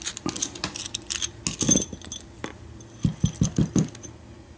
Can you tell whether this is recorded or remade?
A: recorded